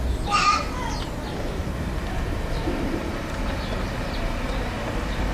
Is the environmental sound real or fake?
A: real